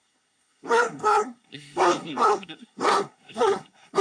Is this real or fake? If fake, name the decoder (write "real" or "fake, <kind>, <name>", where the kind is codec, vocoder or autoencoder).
fake, codec, SNAC